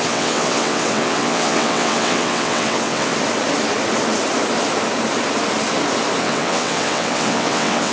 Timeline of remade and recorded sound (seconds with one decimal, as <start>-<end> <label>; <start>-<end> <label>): 0.0-3.1 remade; 3.1-6.2 recorded; 6.2-7.9 remade